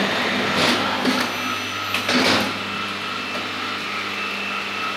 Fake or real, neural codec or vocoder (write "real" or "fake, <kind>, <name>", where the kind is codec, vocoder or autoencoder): real